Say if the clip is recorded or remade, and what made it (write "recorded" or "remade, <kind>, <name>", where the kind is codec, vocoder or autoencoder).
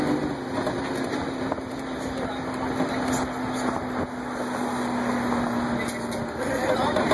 recorded